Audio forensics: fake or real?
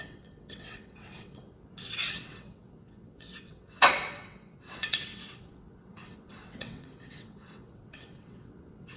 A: fake